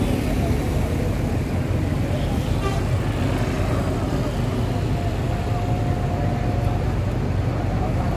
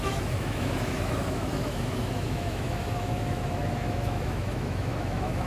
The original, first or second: first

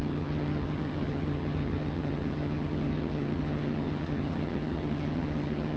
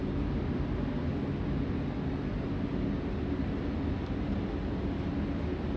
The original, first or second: second